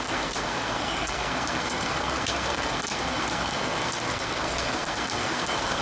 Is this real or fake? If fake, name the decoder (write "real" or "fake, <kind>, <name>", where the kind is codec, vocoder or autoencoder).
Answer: fake, codec, SNAC